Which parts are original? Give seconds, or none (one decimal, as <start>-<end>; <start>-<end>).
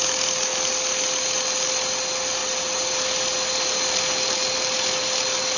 0.0-5.6